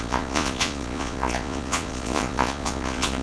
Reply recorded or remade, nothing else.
remade